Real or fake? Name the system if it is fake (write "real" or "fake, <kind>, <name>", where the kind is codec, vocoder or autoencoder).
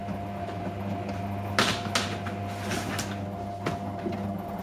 real